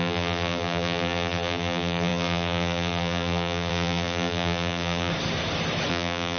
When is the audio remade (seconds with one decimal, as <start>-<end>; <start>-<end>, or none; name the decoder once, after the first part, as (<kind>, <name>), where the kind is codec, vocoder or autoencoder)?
0.0-5.1 (vocoder, BigVGAN v2); 5.9-6.4